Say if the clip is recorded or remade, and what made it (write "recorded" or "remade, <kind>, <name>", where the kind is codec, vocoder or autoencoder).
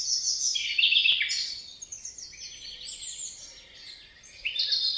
recorded